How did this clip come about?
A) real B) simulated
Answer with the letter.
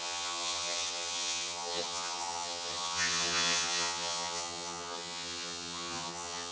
B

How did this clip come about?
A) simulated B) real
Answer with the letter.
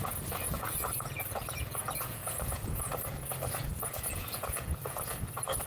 A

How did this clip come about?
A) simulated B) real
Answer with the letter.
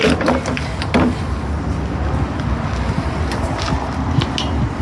B